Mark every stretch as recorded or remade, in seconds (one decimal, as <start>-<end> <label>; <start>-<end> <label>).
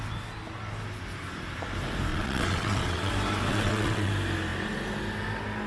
0.0-2.1 recorded; 2.1-3.1 remade; 3.1-3.5 recorded; 3.5-4.1 remade; 4.1-5.7 recorded